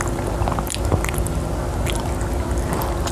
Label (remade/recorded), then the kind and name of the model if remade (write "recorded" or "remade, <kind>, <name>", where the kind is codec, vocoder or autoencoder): recorded